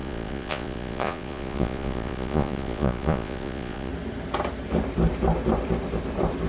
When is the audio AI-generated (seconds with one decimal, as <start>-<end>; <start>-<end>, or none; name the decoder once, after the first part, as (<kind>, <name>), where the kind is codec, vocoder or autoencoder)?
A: 0.0-3.9 (vocoder, Vocos)